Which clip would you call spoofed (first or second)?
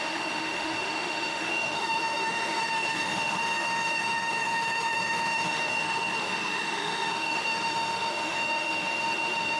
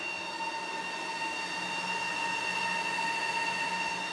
first